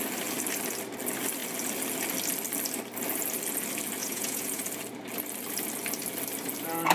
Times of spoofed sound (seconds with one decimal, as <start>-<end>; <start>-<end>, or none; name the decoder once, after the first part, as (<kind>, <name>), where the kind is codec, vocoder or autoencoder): 4.0-4.6 (vocoder, Vocos)